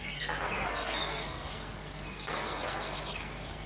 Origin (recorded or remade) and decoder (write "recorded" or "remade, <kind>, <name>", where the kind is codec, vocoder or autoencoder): remade, codec, SNAC